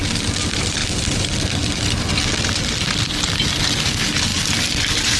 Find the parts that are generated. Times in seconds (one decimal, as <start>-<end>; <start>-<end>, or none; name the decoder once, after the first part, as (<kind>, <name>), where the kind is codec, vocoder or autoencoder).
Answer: none